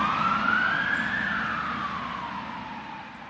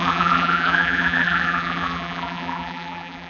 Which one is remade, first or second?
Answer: second